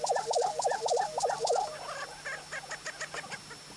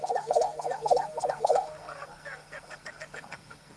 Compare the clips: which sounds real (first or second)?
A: first